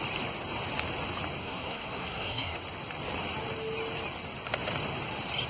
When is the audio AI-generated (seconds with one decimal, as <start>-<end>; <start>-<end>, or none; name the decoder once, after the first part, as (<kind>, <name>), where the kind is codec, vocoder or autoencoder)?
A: 1.4-2.6 (codec, SNAC)